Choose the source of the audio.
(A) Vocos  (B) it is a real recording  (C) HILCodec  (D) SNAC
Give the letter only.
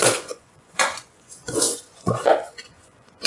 A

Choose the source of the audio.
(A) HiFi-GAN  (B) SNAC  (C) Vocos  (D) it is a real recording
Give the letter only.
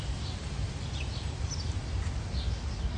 D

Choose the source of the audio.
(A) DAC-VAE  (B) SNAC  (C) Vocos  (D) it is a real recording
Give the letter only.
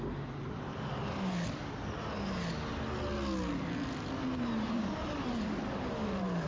D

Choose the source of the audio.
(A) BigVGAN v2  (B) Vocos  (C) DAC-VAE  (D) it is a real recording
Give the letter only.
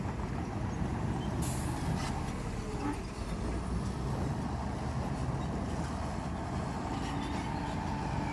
D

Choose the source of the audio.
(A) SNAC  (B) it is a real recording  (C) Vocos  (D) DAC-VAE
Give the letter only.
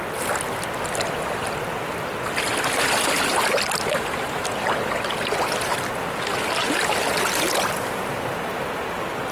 B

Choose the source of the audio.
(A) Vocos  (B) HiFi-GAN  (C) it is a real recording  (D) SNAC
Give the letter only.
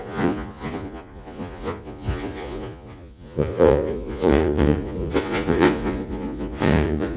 A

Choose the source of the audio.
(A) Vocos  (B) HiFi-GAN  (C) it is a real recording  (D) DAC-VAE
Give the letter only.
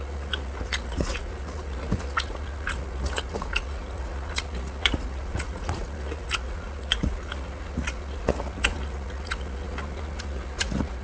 A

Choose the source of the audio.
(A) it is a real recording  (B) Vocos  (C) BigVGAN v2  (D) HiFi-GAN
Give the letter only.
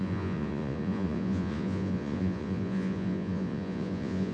B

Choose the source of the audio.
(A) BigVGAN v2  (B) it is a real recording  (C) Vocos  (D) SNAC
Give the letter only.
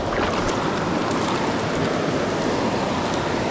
B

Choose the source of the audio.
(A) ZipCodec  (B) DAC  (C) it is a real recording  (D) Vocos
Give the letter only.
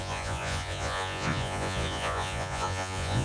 D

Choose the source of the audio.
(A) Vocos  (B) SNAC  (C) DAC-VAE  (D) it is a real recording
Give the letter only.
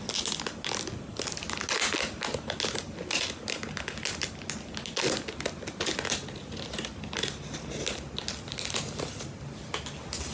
D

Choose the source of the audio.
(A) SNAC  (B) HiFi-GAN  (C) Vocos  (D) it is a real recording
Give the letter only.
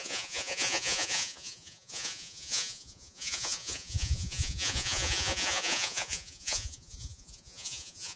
C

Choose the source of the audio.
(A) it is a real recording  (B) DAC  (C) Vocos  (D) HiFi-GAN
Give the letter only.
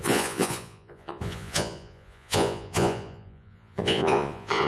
C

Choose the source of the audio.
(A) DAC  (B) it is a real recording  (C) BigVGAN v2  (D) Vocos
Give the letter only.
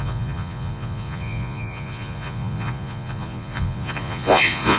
D